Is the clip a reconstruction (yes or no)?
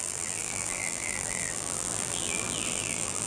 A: yes